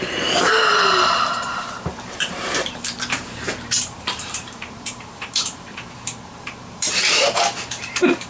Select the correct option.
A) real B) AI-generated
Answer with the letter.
B